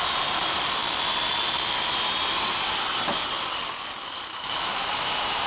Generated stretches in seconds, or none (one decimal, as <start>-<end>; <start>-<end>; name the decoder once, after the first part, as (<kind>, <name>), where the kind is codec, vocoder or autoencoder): 0.0-0.8 (vocoder, BigVGAN v2); 4.1-5.5